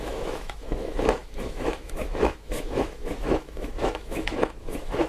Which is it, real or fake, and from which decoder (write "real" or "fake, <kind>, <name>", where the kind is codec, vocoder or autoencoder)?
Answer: fake, autoencoder, DAC-VAE